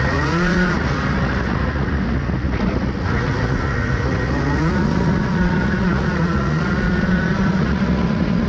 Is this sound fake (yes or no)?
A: yes